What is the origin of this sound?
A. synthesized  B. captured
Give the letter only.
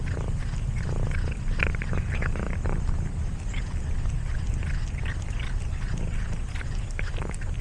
B